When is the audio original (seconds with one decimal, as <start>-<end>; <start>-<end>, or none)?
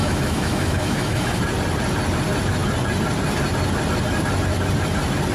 1.4-5.3